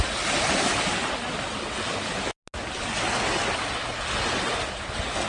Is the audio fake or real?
real